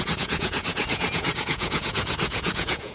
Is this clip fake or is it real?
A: fake